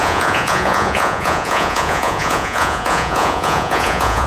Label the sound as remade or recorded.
remade